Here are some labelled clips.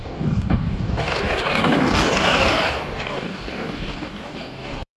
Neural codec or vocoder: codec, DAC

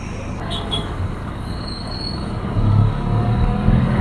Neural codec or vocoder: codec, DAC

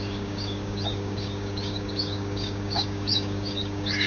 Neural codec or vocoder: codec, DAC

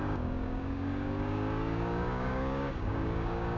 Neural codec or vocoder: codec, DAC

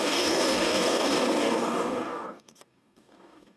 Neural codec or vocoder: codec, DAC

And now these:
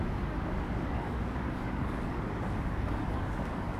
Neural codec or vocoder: codec, DAC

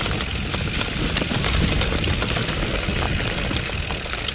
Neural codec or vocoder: none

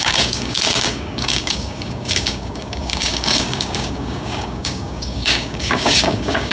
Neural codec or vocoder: codec, DAC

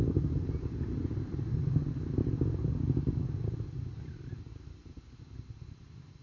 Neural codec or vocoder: none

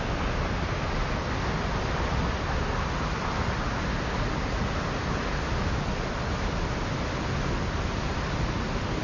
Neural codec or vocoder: none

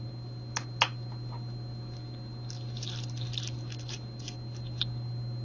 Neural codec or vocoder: none